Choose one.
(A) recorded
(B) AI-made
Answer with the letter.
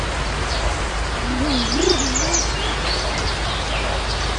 A